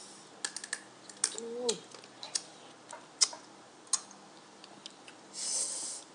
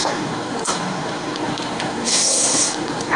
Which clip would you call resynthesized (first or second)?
second